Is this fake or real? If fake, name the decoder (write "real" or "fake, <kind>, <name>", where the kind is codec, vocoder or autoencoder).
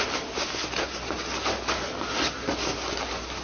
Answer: real